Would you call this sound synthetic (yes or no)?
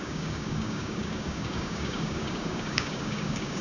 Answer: yes